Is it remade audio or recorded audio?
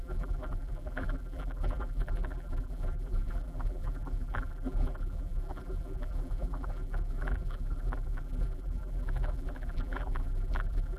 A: remade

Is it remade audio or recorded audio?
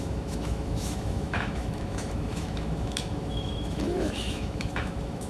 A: remade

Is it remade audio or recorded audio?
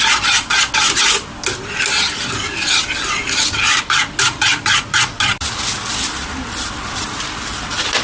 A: recorded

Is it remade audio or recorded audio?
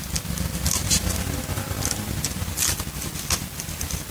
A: recorded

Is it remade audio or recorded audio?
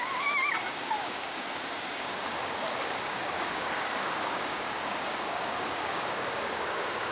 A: remade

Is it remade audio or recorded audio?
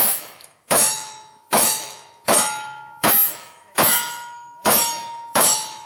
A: remade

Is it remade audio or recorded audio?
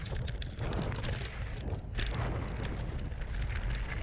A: recorded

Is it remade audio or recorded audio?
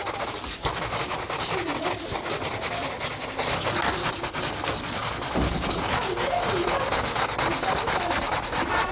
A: recorded